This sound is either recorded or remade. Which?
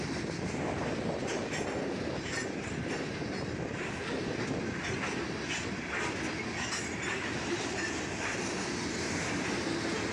recorded